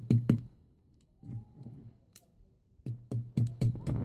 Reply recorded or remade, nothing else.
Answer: remade